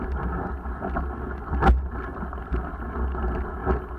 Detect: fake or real real